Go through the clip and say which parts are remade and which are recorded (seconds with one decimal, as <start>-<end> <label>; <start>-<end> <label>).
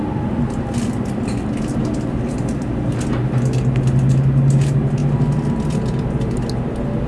0.0-7.1 recorded